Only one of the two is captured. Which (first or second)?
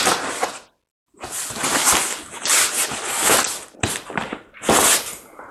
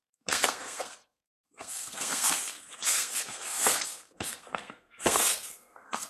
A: first